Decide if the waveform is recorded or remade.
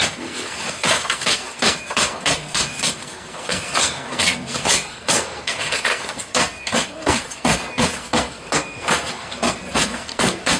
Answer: remade